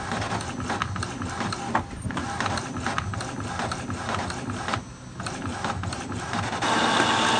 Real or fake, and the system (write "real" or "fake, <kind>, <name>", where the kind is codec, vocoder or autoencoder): real